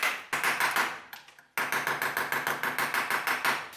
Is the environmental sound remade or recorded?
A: recorded